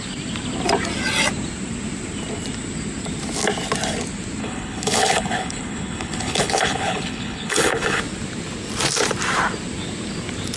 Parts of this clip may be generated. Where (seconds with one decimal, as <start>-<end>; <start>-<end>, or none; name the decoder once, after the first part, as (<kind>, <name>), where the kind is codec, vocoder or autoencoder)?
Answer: 4.4-8.0 (codec, HILCodec)